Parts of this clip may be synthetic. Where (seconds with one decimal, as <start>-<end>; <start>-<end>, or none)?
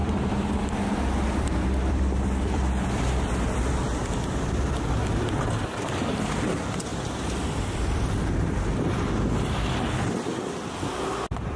0.0-3.6; 6.9-8.2